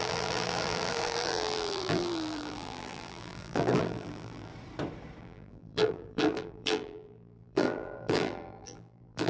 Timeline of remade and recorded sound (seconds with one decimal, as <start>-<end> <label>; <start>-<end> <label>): 0.0-4.5 remade; 4.5-5.2 recorded; 5.2-9.3 remade